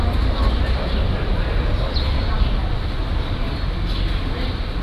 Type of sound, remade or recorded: recorded